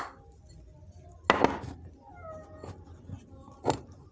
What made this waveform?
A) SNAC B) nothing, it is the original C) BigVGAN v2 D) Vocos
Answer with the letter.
B